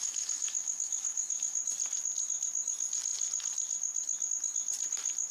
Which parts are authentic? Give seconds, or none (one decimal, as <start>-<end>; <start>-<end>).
1.6-5.3